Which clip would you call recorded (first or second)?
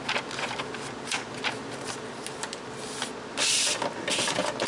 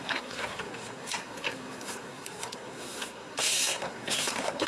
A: first